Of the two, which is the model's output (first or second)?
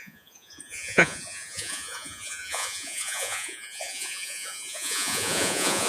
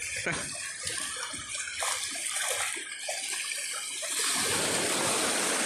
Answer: first